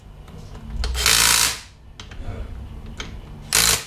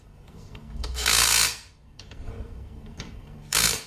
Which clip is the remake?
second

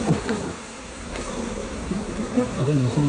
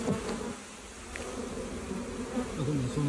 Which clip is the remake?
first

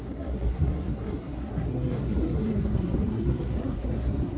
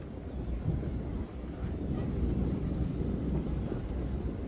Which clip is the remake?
first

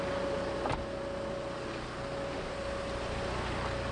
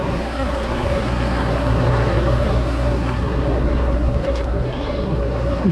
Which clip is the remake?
second